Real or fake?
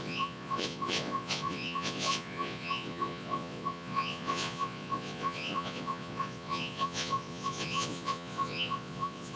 fake